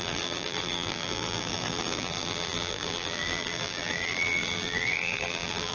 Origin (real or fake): fake